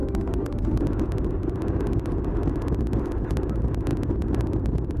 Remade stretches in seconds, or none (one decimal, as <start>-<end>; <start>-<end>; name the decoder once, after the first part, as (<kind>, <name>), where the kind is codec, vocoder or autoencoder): 0.0-0.8 (autoencoder, DAC-VAE)